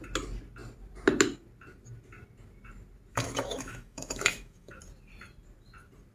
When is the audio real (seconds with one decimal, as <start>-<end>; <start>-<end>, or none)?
0.0-3.1; 4.8-6.1